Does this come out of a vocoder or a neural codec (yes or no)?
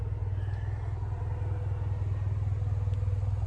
no